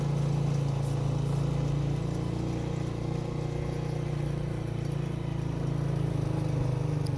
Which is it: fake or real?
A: real